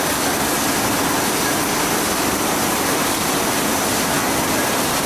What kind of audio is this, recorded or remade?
recorded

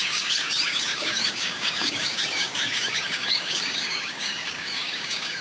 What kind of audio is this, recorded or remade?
remade